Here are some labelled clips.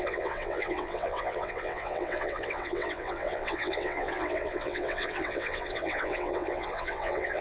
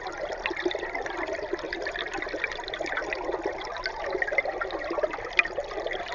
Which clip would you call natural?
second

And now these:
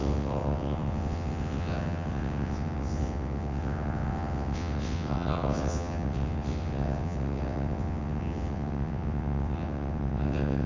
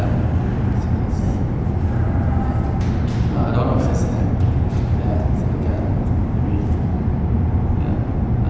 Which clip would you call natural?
second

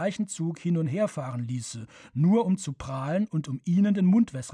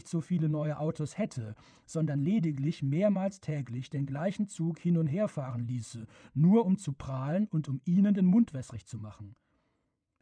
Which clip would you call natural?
first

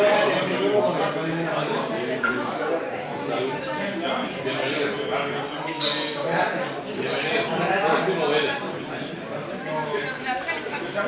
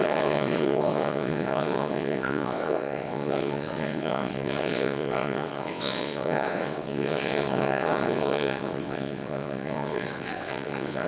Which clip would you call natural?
first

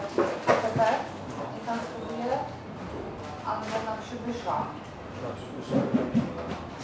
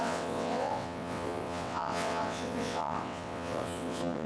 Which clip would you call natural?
first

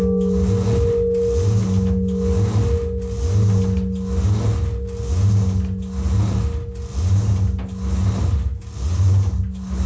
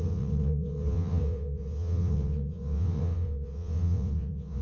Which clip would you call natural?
first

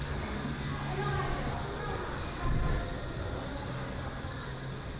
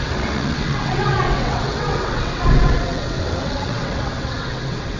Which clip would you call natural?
first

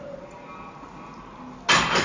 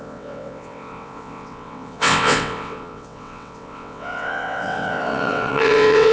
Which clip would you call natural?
first